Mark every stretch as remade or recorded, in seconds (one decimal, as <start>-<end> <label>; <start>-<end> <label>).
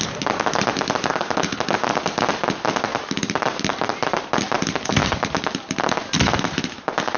0.0-2.9 recorded; 2.9-4.2 remade; 4.2-7.2 recorded